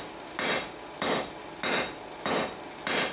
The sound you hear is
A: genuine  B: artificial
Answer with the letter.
A